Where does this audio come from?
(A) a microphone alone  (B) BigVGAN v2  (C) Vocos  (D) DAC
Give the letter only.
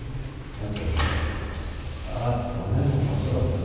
A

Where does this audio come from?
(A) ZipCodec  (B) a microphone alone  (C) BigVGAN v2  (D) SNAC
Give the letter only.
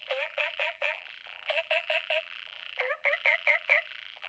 C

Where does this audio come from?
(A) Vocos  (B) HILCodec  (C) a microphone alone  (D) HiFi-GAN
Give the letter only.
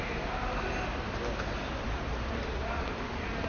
C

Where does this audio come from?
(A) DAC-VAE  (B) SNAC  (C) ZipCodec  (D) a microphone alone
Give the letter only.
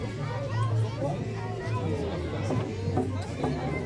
D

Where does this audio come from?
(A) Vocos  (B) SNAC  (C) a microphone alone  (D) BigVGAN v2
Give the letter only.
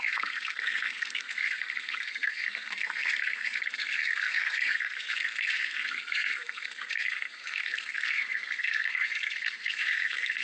B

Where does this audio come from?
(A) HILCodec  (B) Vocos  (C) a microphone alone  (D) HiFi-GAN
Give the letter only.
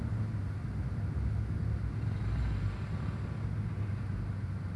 C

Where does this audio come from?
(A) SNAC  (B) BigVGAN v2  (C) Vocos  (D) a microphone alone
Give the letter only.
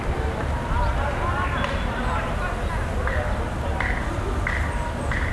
D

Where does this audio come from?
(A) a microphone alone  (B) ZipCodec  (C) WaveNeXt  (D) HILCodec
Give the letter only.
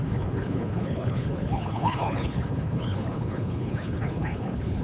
D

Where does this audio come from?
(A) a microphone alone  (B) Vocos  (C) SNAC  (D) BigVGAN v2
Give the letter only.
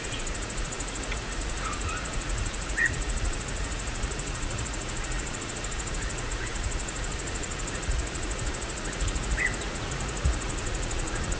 B